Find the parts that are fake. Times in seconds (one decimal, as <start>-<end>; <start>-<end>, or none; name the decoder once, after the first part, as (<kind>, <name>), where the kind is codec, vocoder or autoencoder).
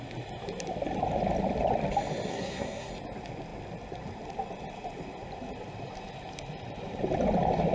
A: 2.3-2.9 (codec, SNAC)